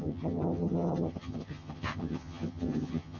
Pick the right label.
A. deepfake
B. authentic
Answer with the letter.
A